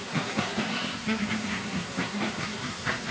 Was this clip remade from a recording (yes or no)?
yes